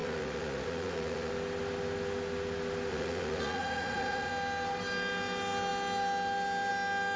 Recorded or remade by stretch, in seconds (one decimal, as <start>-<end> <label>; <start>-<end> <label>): 0.0-1.3 remade; 1.3-2.9 recorded; 2.9-4.3 remade; 4.3-7.2 recorded